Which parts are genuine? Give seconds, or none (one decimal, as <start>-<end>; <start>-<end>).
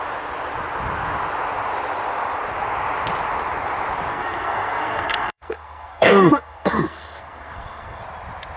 0.0-4.1; 8.0-8.6